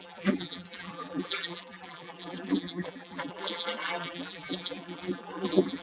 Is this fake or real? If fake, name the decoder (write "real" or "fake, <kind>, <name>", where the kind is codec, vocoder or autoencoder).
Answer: fake, vocoder, BigVGAN v2